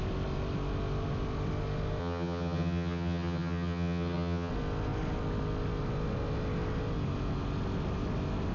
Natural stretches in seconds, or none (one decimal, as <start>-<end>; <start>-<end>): 0.0-2.0; 4.5-8.5